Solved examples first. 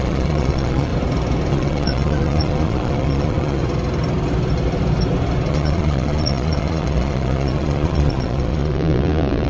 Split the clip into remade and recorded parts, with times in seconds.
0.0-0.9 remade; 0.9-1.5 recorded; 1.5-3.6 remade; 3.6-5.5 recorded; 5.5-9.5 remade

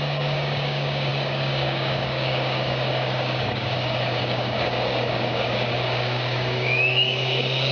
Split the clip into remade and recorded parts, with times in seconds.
0.0-7.7 remade

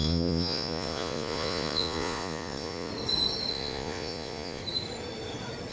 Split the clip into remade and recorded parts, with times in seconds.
0.0-2.9 remade; 2.9-3.5 recorded; 3.5-4.6 remade; 4.6-5.7 recorded

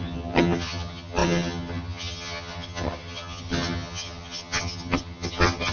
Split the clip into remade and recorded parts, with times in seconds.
0.0-5.7 remade

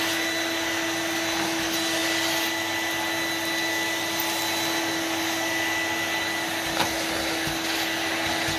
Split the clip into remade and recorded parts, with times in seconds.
0.0-8.6 recorded